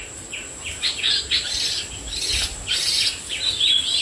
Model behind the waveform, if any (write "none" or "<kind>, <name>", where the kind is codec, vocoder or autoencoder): none